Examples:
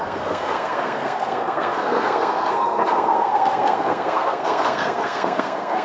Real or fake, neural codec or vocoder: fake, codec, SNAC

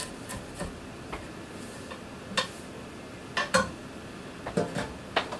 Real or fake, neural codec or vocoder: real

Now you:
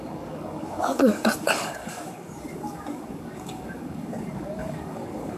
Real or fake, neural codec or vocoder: fake, codec, DAC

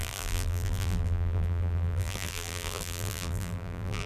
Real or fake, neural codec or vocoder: fake, vocoder, BigVGAN v2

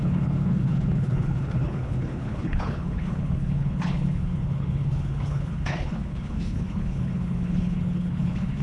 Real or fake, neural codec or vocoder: fake, codec, HILCodec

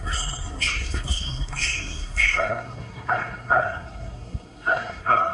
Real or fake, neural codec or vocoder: fake, codec, SNAC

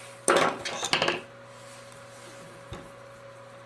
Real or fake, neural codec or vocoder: real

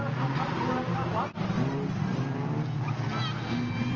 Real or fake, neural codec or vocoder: real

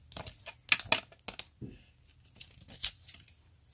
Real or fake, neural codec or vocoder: real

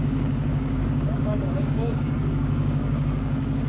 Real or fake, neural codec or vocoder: fake, codec, DAC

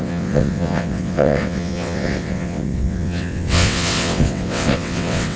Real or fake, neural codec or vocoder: fake, vocoder, WaveNeXt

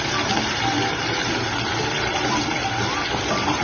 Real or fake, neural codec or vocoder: fake, vocoder, BigVGAN v2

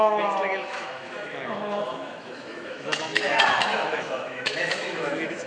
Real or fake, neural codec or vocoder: fake, autoencoder, DAC-VAE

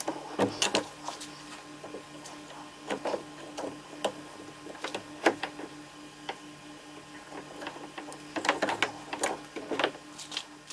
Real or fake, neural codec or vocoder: real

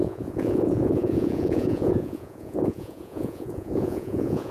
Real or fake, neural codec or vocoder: fake, vocoder, Vocos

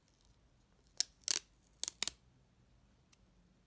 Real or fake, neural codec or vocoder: real